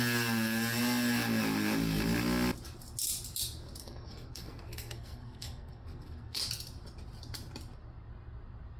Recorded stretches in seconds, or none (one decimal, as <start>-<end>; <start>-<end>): 0.0-3.8; 6.4-8.8